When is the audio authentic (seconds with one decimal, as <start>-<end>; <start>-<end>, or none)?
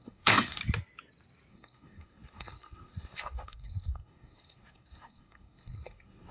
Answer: 0.6-1.5